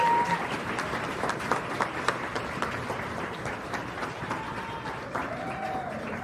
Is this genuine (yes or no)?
no